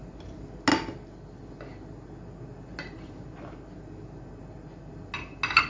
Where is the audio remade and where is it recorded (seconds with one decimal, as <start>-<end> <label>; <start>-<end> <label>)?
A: 0.0-5.7 recorded